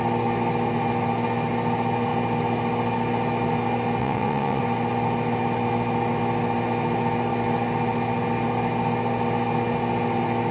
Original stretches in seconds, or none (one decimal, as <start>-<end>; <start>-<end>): 0.0-4.0; 4.6-10.5